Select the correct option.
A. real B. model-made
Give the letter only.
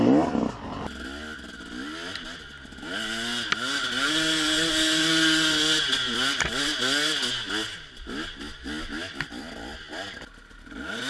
A